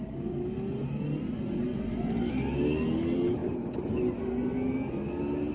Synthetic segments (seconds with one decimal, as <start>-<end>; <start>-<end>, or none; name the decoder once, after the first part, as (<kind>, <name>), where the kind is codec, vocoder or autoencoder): 1.7-2.3 (vocoder, BigVGAN v2)